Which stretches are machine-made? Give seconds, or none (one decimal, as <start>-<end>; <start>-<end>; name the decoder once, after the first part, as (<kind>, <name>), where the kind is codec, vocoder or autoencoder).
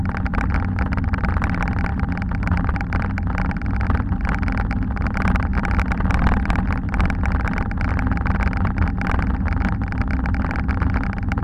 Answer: none